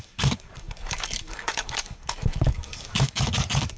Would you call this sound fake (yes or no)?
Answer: yes